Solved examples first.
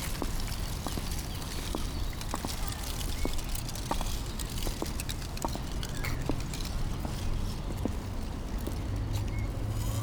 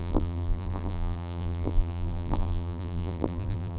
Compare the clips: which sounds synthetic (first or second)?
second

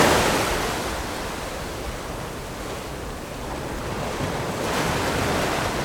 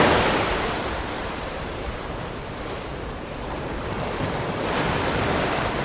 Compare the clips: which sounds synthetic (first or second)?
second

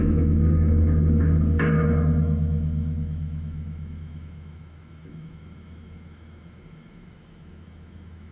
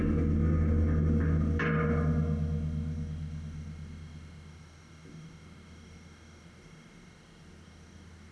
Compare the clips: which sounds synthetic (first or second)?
first